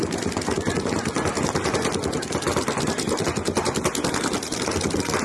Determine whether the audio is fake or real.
real